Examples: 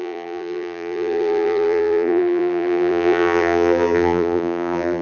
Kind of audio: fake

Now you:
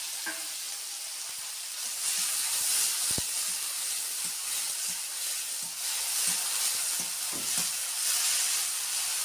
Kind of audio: real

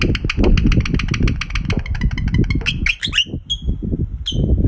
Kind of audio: real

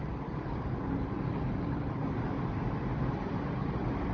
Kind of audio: real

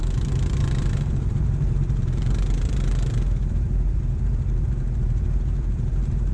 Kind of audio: fake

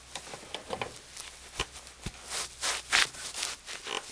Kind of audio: real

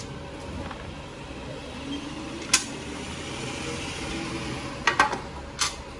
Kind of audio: real